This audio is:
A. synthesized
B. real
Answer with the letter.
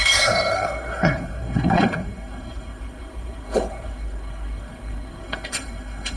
A